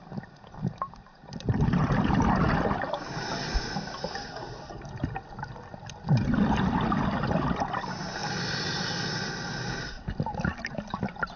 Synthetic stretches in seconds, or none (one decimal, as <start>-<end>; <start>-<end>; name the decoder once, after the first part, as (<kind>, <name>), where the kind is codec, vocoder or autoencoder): none

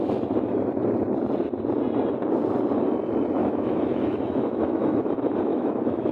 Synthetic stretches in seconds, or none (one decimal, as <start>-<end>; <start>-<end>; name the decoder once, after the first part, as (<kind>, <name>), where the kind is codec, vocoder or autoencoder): 3.4-5.1 (autoencoder, DAC-VAE); 5.5-6.1

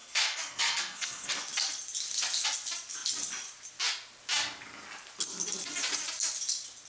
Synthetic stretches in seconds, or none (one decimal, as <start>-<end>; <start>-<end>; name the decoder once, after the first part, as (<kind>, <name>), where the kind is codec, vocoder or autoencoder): 0.0-1.3 (codec, SNAC)

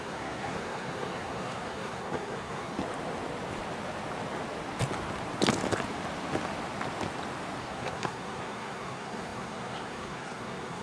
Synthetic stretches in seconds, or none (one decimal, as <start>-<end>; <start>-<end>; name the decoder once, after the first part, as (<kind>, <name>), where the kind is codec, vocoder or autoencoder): 0.0-2.8 (codec, SNAC); 7.6-10.8

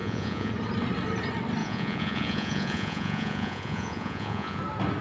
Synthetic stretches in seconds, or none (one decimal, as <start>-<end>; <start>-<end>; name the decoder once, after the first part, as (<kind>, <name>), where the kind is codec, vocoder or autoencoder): 0.0-0.5 (vocoder, Vocos); 1.6-4.6

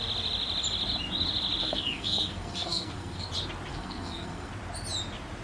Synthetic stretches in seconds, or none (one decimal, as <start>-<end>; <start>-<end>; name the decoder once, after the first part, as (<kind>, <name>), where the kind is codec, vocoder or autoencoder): 1.6-3.3 (codec, SNAC); 3.7-4.5